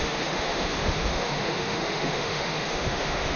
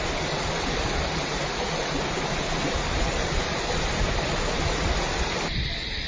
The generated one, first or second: first